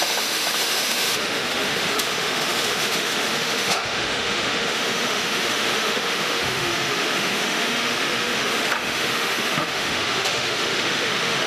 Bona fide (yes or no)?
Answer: no